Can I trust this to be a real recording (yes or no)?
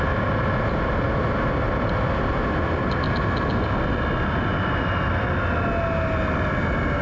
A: yes